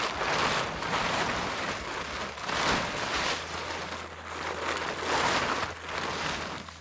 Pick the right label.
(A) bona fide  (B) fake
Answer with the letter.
A